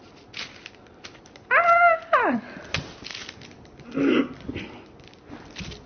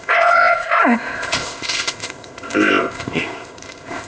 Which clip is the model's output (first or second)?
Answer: second